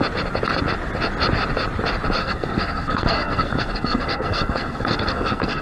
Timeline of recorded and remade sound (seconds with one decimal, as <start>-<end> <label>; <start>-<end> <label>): 0.0-2.2 recorded; 2.2-5.6 remade